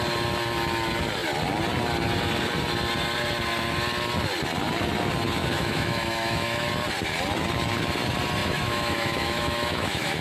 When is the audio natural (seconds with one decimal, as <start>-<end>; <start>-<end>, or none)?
0.0-5.4; 6.7-8.4